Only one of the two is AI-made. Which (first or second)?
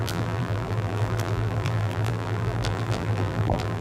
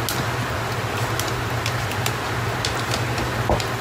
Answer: first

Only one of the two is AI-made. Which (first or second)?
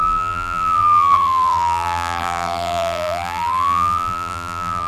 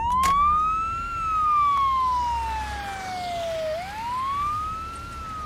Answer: first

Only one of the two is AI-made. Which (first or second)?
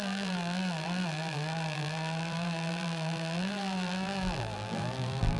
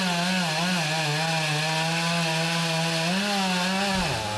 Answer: first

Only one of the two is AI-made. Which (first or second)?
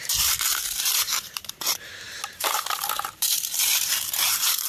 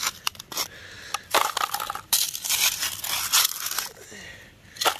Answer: first